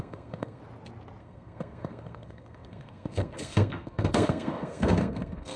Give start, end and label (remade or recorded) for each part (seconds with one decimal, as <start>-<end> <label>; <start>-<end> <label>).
0.0-0.6 remade; 0.6-1.2 recorded; 1.2-5.6 remade